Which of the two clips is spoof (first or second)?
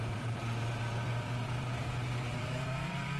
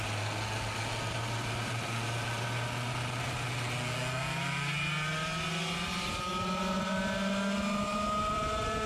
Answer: first